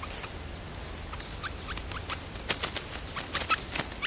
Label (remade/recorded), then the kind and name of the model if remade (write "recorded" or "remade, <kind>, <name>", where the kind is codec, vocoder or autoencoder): recorded